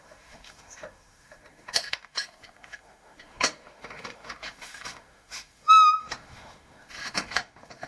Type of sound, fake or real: fake